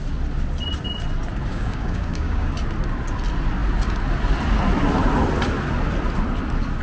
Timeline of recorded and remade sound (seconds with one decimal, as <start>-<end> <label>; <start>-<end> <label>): 0.0-1.5 recorded; 1.5-2.5 remade; 2.5-6.8 recorded